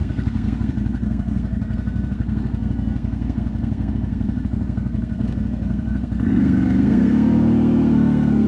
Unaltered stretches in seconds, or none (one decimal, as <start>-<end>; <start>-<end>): none